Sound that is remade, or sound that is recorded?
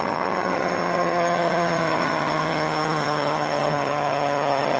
remade